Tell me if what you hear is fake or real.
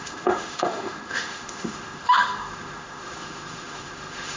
fake